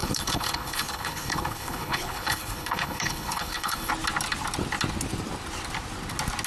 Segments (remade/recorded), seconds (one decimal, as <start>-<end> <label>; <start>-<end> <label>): 0.0-3.9 remade; 3.9-6.5 recorded